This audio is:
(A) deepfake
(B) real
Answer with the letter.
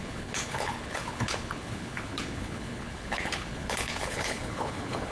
A